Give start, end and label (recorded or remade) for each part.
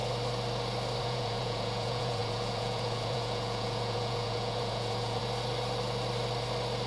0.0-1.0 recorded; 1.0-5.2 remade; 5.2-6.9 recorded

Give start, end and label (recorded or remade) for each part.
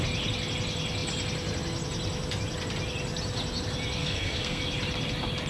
0.0-4.0 recorded; 4.0-4.6 remade; 4.6-5.5 recorded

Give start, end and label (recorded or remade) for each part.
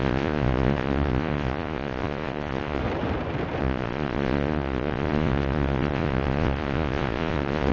0.0-2.8 remade; 2.8-3.6 recorded; 3.6-7.7 remade